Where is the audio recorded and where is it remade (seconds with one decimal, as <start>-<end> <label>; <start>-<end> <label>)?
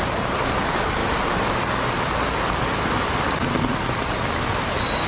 0.0-5.1 recorded